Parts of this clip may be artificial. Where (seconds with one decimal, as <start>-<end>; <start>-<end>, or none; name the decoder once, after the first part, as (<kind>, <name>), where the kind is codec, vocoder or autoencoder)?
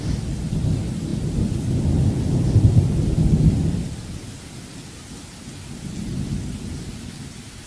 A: none